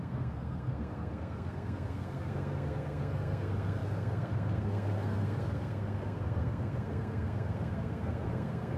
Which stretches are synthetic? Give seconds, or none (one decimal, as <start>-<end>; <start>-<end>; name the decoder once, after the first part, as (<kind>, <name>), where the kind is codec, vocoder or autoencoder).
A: 0.0-8.8 (codec, SNAC)